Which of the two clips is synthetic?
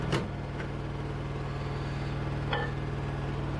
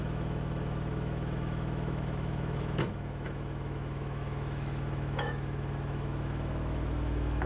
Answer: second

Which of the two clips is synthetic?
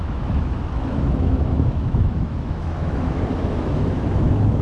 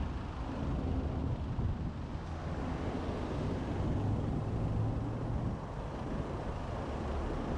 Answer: first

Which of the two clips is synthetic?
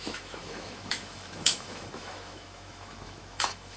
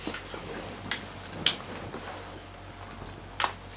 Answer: first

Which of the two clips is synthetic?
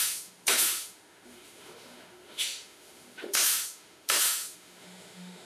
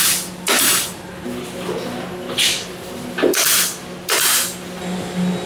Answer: first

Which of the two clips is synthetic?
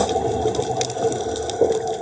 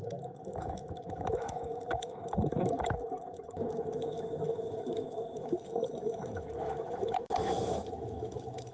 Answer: second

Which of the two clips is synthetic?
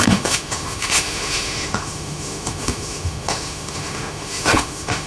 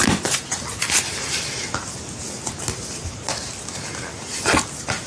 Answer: first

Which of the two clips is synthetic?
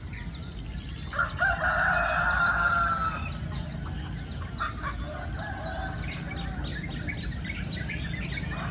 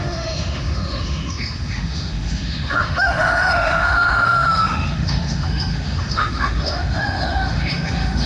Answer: second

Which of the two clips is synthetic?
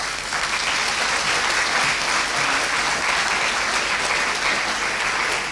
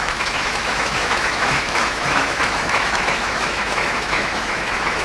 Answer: second